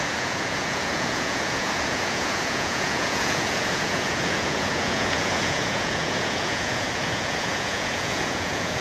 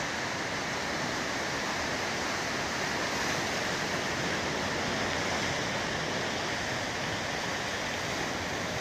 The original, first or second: second